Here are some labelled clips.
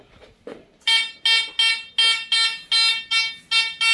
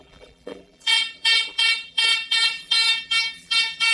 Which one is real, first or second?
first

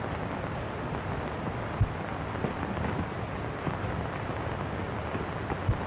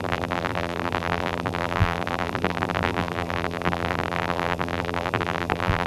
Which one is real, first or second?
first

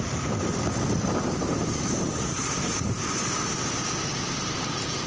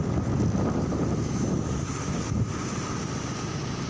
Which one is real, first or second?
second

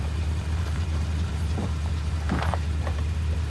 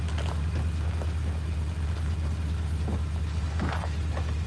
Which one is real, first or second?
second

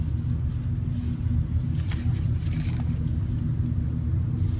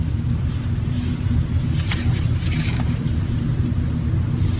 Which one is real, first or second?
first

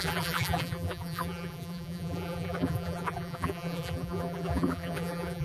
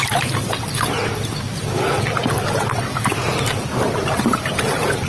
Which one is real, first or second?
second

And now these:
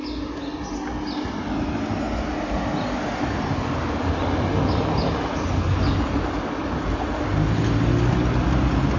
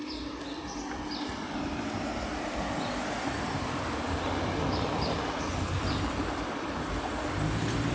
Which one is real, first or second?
first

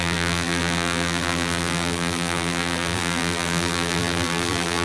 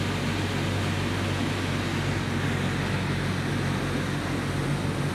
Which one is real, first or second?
second